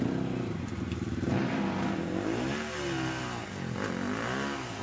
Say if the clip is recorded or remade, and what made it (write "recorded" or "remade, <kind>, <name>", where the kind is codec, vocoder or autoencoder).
recorded